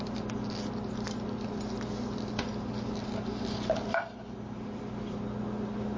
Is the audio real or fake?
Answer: real